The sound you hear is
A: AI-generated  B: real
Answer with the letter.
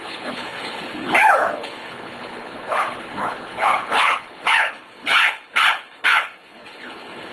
A